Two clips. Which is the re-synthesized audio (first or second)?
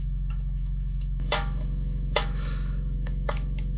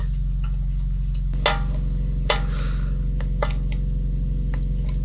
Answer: first